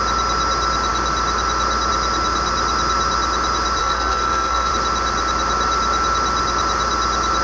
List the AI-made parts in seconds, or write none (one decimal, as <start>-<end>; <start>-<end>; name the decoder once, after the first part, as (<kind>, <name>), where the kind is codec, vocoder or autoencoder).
3.8-4.7 (codec, SNAC)